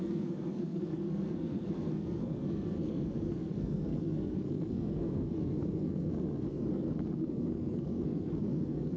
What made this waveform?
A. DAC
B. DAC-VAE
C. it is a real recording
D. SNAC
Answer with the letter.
D